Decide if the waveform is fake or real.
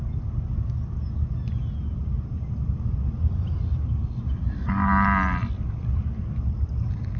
real